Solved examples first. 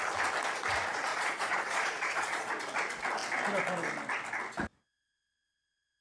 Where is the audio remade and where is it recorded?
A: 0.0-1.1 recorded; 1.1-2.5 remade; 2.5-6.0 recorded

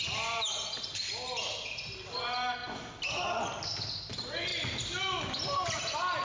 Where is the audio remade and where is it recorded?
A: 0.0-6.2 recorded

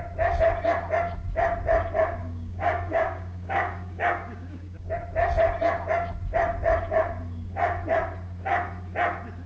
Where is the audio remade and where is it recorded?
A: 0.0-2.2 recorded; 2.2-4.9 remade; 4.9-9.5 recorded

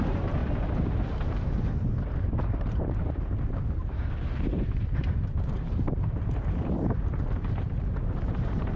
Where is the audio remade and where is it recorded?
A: 0.0-0.4 remade; 0.4-1.0 recorded; 1.0-8.8 remade

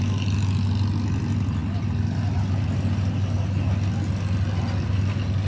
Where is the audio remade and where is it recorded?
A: 0.0-5.5 recorded

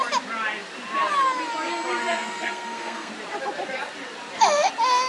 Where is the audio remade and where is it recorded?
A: 0.0-2.0 recorded; 2.0-3.1 remade; 3.1-5.1 recorded

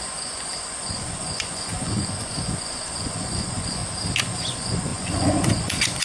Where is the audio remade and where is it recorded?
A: 0.0-3.8 remade; 3.8-4.4 recorded; 4.4-6.0 remade